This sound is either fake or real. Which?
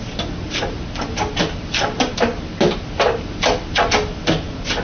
real